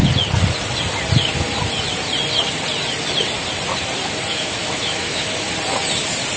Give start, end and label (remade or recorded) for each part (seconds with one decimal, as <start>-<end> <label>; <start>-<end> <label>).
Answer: 0.0-4.3 recorded; 4.3-5.5 remade; 5.5-6.4 recorded